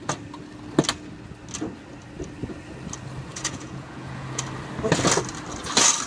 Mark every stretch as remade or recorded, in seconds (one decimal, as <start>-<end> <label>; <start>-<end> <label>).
0.0-3.3 recorded; 3.3-4.4 remade; 4.4-6.1 recorded